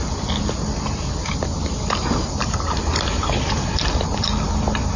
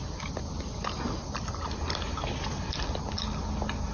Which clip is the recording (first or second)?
second